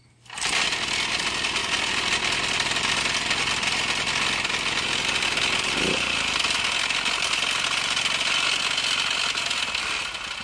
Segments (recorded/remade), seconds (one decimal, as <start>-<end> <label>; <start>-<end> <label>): 0.0-1.6 recorded; 1.6-2.2 remade; 2.2-10.4 recorded